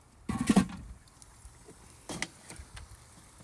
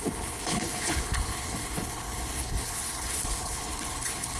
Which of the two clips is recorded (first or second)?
first